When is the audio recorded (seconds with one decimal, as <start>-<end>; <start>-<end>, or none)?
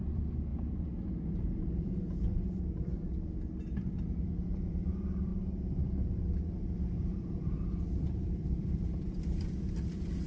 0.5-1.3; 5.3-6.6